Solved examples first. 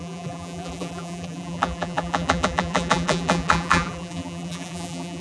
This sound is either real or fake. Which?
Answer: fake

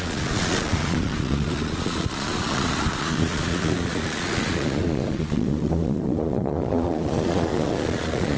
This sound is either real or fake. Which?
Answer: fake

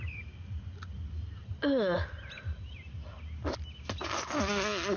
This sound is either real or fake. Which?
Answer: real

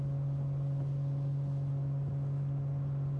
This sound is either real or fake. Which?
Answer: real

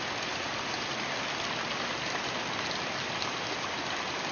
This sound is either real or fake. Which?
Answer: real